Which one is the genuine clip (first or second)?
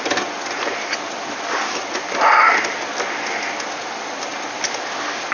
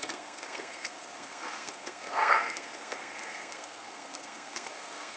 first